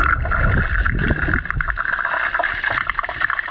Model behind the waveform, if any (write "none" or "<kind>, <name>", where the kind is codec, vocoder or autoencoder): none